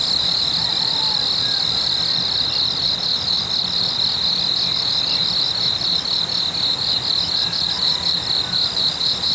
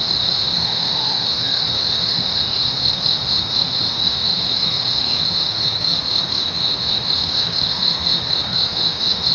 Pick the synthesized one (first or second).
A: second